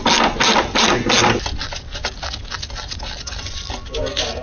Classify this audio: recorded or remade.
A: recorded